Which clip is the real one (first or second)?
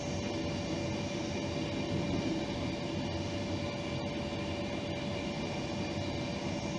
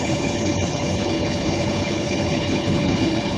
first